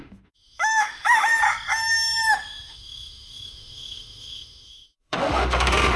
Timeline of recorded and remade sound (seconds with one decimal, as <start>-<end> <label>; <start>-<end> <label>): 0.0-1.4 remade; 1.4-2.3 recorded; 2.3-6.0 remade